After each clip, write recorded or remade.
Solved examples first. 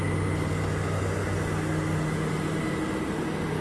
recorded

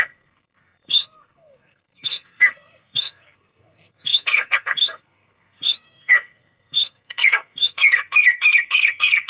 remade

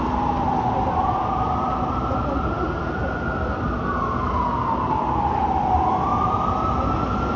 recorded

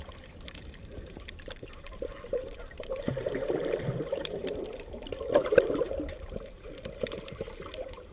remade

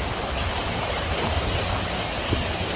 recorded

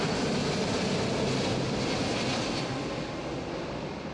recorded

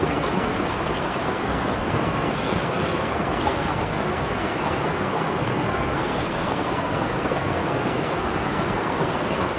remade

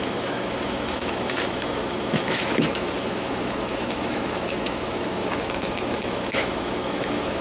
remade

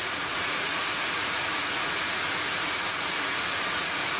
remade